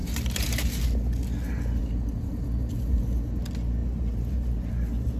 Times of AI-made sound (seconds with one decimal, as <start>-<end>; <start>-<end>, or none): 0.0-0.8; 1.8-3.0; 3.8-4.7